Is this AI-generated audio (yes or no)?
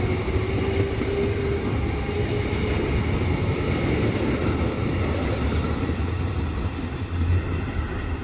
no